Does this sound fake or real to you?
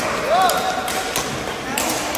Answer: real